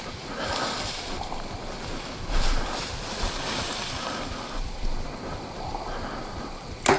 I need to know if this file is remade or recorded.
remade